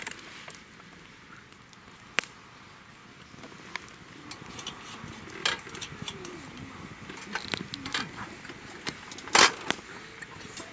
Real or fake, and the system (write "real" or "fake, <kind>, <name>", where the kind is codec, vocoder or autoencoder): real